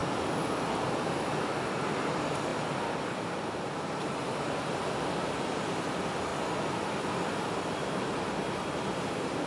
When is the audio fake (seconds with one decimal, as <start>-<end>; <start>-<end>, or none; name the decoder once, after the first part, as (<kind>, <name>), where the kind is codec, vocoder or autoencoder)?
none